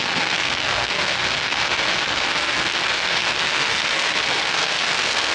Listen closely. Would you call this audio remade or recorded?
remade